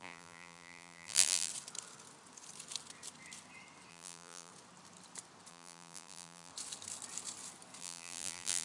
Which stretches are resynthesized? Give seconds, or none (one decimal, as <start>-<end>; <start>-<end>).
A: 0.0-1.5; 3.9-4.5; 5.5-6.5; 7.8-8.6